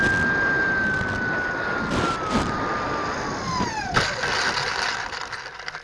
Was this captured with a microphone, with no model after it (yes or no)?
yes